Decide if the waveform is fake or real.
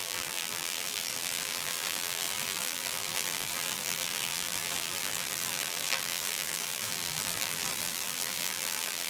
fake